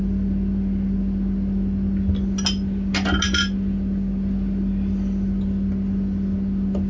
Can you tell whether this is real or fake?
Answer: real